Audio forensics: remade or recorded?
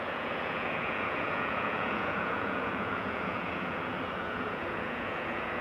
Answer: remade